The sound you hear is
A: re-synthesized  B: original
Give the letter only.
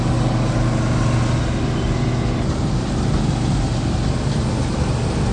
B